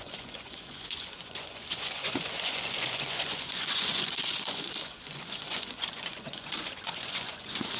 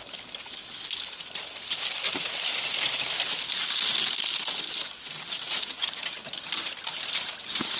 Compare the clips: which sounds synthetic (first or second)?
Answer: first